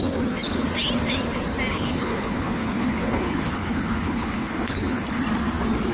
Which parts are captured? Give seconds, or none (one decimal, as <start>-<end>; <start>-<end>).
0.0-1.7; 5.2-5.9